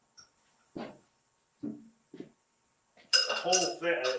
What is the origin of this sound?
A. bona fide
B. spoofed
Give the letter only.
A